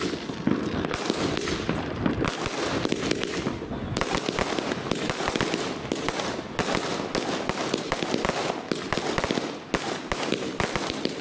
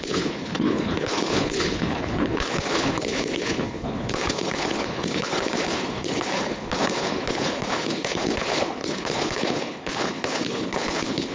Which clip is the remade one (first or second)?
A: second